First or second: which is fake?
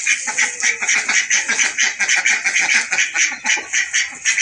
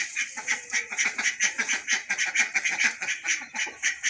second